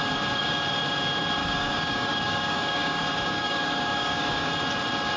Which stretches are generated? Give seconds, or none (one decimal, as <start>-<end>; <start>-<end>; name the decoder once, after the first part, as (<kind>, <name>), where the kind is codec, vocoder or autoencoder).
1.4-4.5 (codec, DAC)